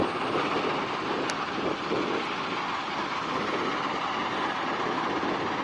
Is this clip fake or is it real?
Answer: real